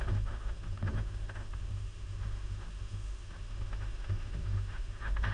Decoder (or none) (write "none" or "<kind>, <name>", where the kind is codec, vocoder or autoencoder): autoencoder, DAC-VAE